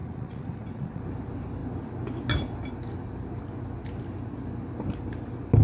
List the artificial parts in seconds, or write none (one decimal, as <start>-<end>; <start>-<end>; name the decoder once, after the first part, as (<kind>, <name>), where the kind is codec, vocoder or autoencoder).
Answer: 0.0-1.0 (vocoder, Vocos)